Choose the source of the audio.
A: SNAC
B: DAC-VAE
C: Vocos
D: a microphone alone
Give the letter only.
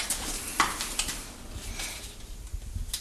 D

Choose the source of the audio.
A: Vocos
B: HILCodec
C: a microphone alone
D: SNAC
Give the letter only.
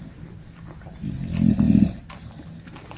C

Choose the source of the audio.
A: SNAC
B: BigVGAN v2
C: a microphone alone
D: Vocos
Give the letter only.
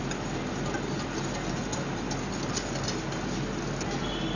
C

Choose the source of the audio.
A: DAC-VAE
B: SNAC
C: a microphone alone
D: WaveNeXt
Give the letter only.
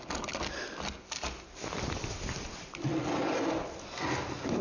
C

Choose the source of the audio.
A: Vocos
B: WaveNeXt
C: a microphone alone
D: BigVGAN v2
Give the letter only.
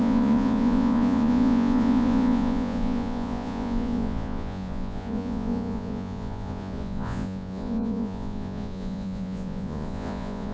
A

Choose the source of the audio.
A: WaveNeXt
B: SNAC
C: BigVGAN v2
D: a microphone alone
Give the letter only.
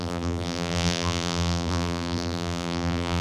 C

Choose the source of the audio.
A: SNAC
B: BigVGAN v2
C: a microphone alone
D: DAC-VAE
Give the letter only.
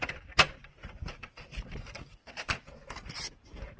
C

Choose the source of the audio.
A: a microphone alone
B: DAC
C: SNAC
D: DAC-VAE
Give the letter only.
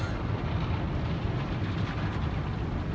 A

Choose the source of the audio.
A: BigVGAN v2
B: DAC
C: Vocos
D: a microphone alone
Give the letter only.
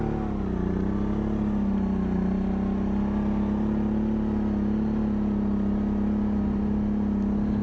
D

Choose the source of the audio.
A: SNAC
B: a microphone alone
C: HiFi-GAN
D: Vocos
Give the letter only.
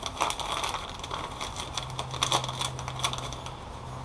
B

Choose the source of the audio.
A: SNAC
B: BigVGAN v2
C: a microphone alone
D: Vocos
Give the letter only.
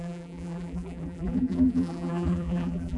B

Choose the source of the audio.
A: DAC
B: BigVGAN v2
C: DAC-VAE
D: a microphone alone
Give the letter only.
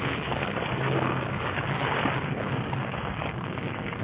A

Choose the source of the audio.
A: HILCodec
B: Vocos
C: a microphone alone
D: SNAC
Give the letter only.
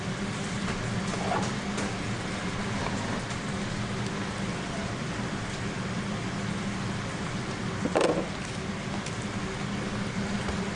C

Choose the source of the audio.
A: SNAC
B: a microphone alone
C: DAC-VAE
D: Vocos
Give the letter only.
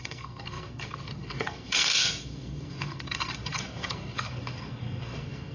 A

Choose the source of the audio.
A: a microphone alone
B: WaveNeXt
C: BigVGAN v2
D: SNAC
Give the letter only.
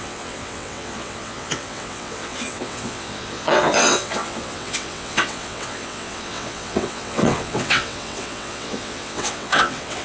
B